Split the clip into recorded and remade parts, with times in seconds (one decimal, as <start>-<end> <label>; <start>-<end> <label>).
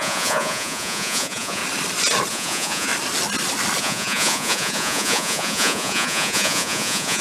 0.0-1.6 remade; 1.6-2.3 recorded; 2.3-2.9 remade; 2.9-3.8 recorded; 3.8-7.2 remade